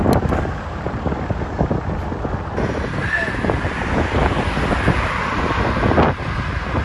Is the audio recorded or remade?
recorded